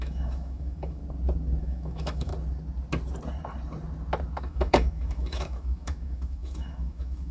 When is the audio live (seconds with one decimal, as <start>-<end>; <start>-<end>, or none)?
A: 1.0-1.6; 2.3-4.4

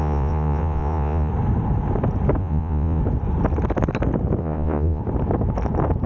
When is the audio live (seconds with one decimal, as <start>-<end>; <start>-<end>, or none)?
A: 1.3-2.4; 3.0-4.4; 5.0-6.1

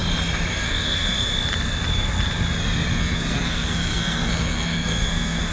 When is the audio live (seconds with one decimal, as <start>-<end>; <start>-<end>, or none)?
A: 0.0-0.5; 1.3-3.0

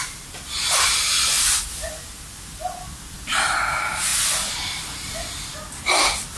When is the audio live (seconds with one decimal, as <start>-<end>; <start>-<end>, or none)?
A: 0.0-6.4

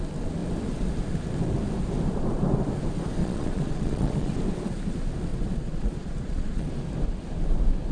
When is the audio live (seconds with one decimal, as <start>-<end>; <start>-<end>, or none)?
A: 0.0-3.2; 4.4-5.3; 6.7-7.9

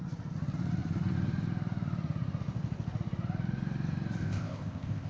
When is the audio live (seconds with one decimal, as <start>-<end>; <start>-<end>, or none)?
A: 0.0-4.2

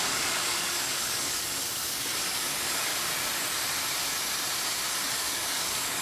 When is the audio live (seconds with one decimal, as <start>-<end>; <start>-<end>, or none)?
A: 2.9-4.9

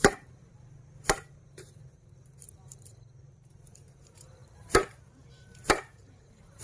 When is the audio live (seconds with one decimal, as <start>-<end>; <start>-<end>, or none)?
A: none